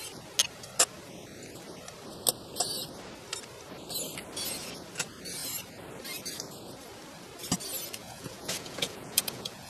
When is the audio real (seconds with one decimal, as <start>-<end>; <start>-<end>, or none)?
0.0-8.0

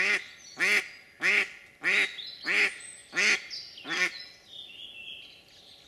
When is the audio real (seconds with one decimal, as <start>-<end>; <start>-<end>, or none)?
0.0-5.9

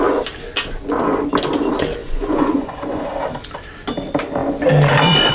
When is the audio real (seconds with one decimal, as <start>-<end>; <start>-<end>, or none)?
0.0-2.0; 3.1-5.3